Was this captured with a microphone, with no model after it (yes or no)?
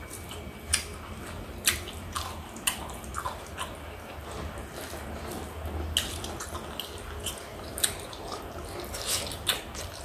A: yes